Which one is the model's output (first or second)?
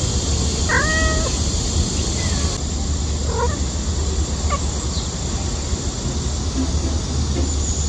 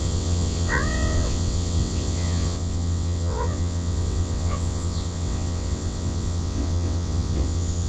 second